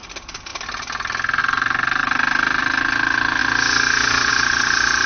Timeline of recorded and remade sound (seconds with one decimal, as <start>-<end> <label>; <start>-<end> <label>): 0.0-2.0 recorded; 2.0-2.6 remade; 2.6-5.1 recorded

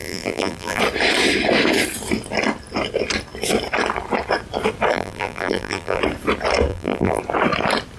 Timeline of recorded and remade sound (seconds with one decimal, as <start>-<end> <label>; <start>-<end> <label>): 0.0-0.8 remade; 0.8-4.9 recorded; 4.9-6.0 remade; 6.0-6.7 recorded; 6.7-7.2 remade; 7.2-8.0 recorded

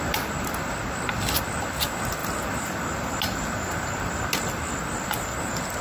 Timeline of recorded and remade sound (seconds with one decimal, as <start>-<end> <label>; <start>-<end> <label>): 0.0-5.8 recorded

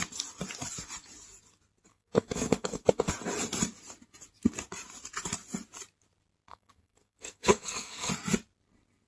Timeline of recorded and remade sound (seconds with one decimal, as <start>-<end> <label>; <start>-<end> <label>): 0.0-1.9 recorded; 1.9-3.1 remade; 3.1-6.5 recorded; 6.5-8.1 remade; 8.1-9.1 recorded

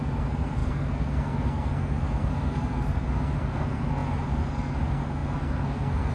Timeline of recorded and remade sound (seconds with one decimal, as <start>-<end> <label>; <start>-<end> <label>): 0.0-6.1 remade